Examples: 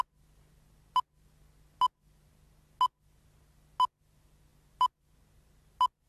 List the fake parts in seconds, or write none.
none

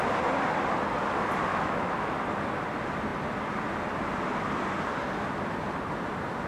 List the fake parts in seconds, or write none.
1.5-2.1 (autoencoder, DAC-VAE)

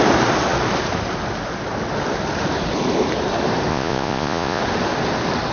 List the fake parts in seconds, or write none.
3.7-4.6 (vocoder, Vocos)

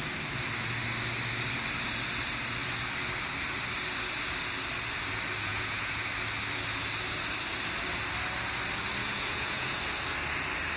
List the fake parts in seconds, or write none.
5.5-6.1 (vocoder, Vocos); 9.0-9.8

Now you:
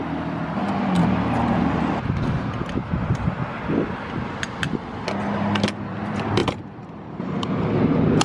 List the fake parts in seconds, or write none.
2.8-3.5 (vocoder, BigVGAN v2); 6.4-7.5

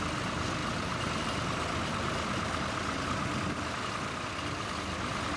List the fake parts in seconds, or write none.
none

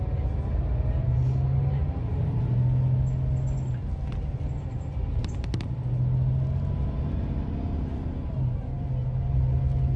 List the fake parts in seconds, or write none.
none